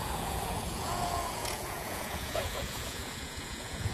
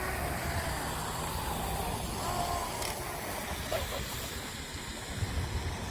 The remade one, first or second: first